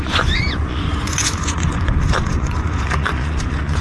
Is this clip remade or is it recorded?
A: remade